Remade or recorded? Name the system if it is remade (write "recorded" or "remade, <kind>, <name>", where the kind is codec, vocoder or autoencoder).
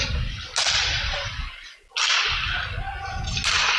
recorded